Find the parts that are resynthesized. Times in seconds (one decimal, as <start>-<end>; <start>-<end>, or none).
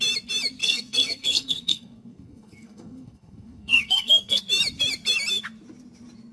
0.6-4.4